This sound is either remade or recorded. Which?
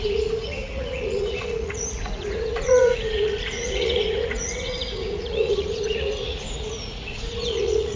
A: remade